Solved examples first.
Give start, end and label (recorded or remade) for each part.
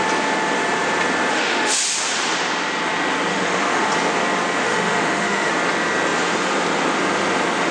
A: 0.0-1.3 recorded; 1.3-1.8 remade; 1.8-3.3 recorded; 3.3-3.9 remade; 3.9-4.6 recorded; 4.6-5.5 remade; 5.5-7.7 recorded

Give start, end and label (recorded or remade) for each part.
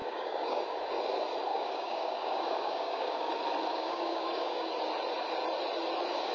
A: 0.0-0.6 remade; 0.6-1.5 recorded; 1.5-3.3 remade; 3.3-3.7 recorded; 3.7-4.7 remade; 4.7-6.3 recorded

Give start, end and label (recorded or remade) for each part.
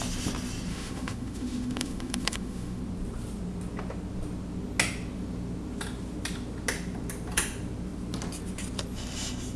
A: 0.0-0.7 recorded; 0.7-2.8 remade; 2.8-9.6 recorded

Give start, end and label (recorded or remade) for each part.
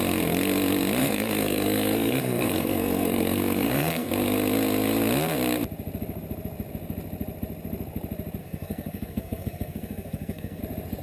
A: 0.0-1.0 recorded; 1.0-4.1 remade; 4.1-8.4 recorded; 8.4-10.6 remade; 10.6-11.0 recorded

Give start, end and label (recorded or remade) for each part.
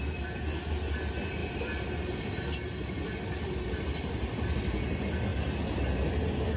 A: 0.0-6.6 recorded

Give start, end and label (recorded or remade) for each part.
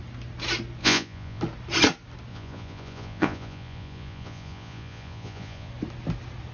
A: 0.0-0.8 recorded; 0.8-1.4 remade; 1.4-2.3 recorded; 2.3-5.7 remade; 5.7-6.5 recorded